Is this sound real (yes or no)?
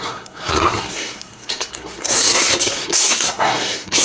no